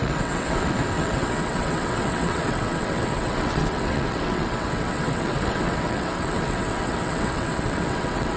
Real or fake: fake